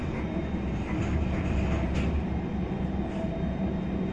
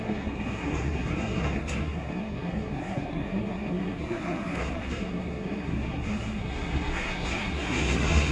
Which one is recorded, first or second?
first